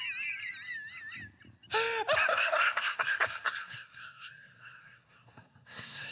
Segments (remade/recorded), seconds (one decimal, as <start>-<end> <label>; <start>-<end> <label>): 0.0-2.3 recorded; 2.3-6.1 remade